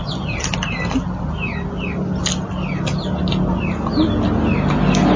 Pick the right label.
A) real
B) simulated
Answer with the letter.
A